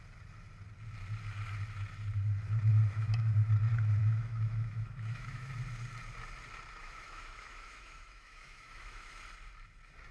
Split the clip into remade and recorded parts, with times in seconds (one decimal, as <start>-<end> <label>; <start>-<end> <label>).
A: 0.0-2.7 recorded; 2.7-3.3 remade; 3.3-4.0 recorded; 4.0-5.5 remade; 5.5-6.8 recorded; 6.8-9.2 remade; 9.2-10.1 recorded